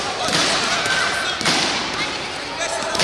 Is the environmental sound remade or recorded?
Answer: recorded